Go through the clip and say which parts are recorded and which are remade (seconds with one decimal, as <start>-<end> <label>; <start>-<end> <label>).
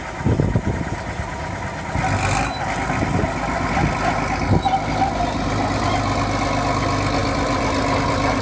0.0-8.4 recorded